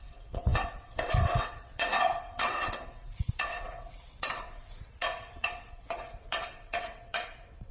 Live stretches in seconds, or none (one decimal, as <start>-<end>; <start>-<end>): none